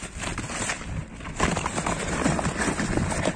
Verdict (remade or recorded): recorded